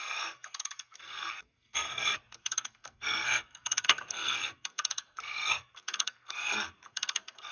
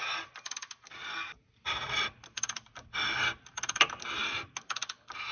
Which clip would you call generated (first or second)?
first